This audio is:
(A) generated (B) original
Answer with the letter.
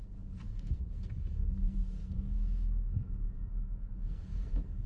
A